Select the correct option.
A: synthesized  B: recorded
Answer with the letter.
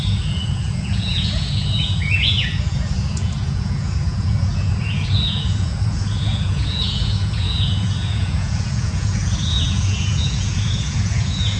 A